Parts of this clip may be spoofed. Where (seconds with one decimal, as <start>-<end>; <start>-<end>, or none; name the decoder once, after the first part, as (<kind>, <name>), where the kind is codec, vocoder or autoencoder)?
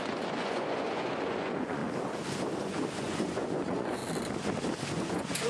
0.0-1.8 (vocoder, Vocos); 2.6-4.0; 4.9-5.5